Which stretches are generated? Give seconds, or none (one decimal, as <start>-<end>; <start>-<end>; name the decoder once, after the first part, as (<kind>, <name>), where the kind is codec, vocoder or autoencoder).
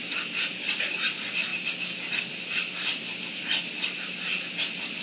none